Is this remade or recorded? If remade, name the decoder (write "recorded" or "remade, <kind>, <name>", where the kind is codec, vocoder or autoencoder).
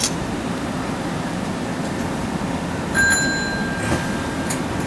recorded